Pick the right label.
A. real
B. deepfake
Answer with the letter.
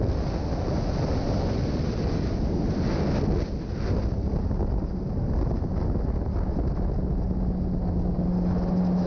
A